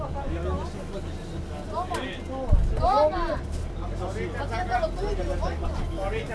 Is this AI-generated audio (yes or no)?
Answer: no